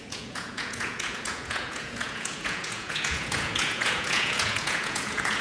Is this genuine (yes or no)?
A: no